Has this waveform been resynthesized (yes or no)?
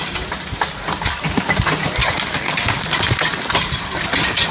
no